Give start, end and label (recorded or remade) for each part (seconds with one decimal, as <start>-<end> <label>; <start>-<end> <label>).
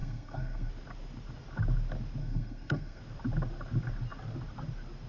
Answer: 0.0-0.7 remade; 0.7-2.2 recorded; 2.2-3.0 remade; 3.0-5.1 recorded